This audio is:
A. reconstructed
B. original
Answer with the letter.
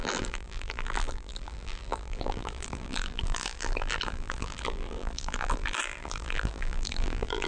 A